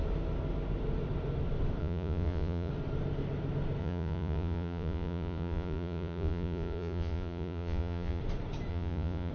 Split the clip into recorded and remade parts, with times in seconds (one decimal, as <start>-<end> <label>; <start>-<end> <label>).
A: 0.0-1.8 recorded; 1.8-2.7 remade; 2.7-3.8 recorded; 3.8-8.2 remade; 8.2-8.7 recorded; 8.7-9.3 remade